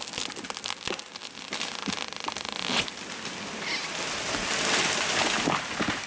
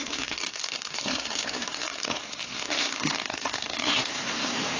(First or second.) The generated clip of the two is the second